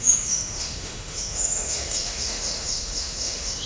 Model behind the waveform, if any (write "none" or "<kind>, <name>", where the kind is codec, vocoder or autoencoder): autoencoder, DAC-VAE